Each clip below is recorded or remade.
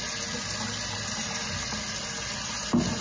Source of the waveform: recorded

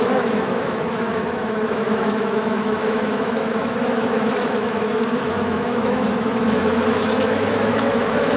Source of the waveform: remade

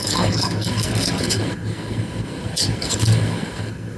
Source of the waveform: remade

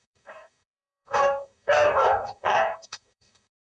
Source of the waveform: remade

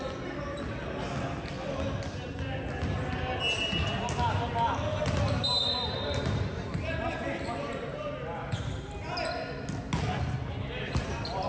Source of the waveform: recorded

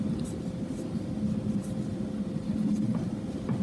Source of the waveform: recorded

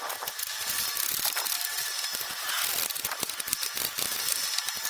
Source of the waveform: recorded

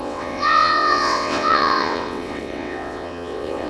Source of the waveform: remade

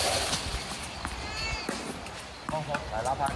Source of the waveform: recorded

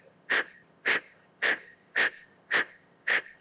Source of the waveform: remade